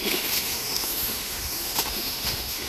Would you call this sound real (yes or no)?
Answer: no